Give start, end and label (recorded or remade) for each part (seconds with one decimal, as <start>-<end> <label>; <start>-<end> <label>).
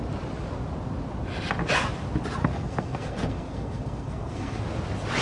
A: 0.0-2.4 recorded; 2.4-4.6 remade; 4.6-5.2 recorded